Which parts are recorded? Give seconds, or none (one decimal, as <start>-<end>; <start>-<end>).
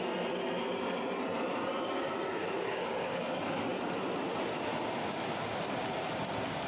0.0-2.4; 3.2-6.7